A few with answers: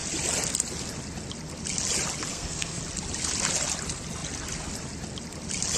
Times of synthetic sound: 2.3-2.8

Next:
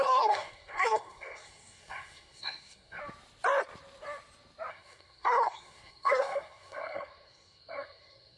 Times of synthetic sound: 0.0-3.0; 4.7-8.4

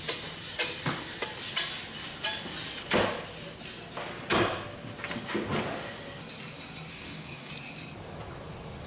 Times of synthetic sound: 6.9-7.5

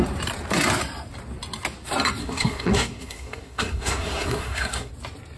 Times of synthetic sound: 2.2-4.9

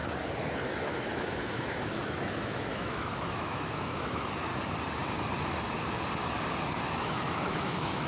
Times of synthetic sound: 0.8-4.5; 6.9-8.1

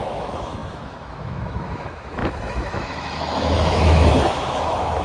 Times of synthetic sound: 0.0-5.0

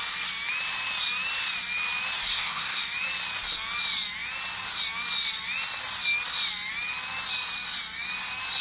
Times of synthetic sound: 2.3-2.8